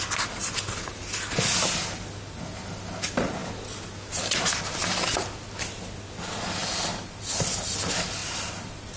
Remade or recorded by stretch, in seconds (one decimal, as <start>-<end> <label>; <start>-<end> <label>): 0.0-6.6 recorded; 6.6-7.2 remade; 7.2-8.2 recorded; 8.2-9.0 remade